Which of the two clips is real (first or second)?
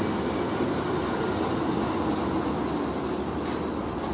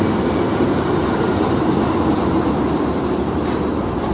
first